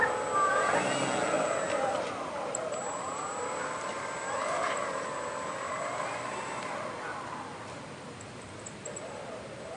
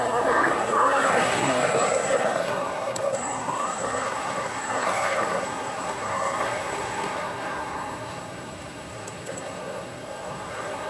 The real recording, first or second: first